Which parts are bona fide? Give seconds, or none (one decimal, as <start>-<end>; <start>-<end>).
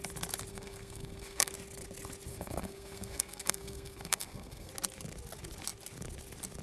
0.0-0.5; 1.5-2.3; 4.7-6.6